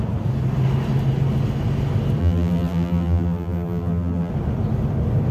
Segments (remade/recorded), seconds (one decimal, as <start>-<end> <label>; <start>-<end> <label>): 0.0-2.2 recorded; 2.2-4.3 remade; 4.3-5.3 recorded